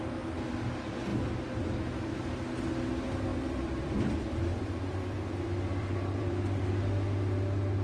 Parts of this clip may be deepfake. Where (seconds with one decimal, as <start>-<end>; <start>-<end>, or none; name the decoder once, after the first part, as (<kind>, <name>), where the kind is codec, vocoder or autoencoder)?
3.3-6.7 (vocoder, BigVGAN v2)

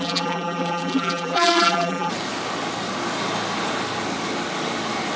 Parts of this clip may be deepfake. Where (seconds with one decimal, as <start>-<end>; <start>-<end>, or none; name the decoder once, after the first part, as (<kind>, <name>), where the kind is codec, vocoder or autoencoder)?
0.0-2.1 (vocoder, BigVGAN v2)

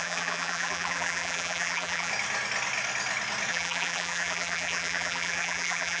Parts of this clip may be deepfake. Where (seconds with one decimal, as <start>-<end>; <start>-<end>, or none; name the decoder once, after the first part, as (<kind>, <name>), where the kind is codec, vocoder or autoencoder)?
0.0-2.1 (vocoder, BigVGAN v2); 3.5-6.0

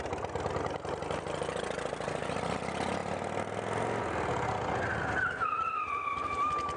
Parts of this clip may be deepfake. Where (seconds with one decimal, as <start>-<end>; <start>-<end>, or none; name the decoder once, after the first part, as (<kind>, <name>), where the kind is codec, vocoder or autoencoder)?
none

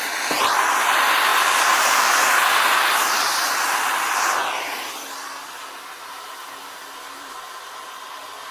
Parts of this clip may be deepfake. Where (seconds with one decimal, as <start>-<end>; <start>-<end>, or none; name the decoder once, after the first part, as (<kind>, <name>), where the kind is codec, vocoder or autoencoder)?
1.3-2.5 (vocoder, BigVGAN v2); 4.4-7.3

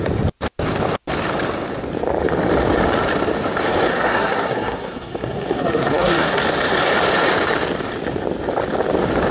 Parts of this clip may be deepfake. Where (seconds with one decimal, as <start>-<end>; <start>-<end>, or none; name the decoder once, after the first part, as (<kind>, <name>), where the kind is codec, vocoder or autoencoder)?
3.9-6.4 (codec, SNAC)